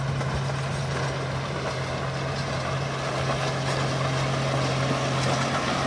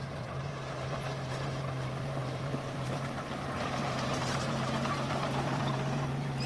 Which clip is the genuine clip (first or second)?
first